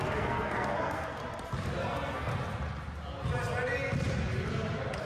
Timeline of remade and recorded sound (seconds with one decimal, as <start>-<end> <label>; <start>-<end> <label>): 0.0-1.2 remade; 1.2-1.8 recorded; 1.8-2.3 remade; 2.3-5.0 recorded

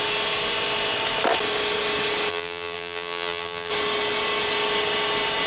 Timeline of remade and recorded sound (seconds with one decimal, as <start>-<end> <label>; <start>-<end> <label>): 0.0-2.3 recorded; 2.3-3.7 remade; 3.7-5.5 recorded

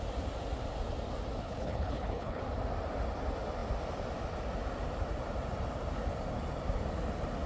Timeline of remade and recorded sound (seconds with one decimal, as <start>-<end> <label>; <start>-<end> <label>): 0.0-1.4 recorded; 1.4-2.4 remade; 2.4-7.5 recorded

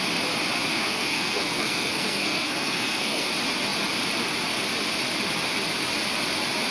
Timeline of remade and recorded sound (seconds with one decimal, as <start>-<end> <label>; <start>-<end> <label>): 0.0-0.7 recorded; 0.7-3.3 remade; 3.3-6.7 recorded